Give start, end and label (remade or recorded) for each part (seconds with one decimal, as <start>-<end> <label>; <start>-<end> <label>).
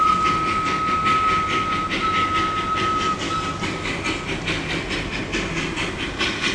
0.0-6.5 recorded